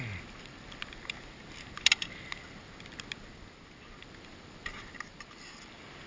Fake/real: real